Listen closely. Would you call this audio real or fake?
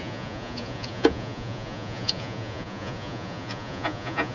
fake